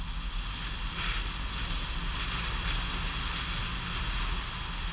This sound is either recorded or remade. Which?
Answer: recorded